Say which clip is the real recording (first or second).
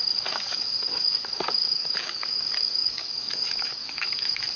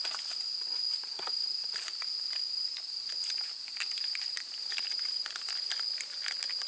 second